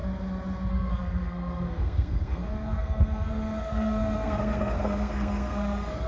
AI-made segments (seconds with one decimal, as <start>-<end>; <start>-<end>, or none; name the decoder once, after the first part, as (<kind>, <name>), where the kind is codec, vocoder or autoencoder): 0.7-6.1 (codec, SNAC)